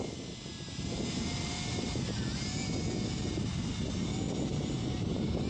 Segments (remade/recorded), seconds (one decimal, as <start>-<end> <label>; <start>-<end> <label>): 0.0-5.5 recorded